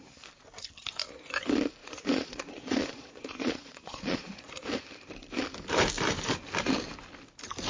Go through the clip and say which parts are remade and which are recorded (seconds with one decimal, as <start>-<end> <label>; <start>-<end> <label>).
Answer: 0.0-1.8 recorded; 1.8-4.5 remade; 4.5-7.7 recorded